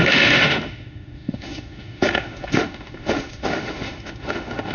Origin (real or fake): fake